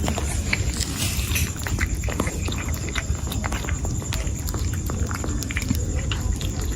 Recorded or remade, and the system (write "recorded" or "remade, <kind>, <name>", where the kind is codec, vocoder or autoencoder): remade, vocoder, BigVGAN v2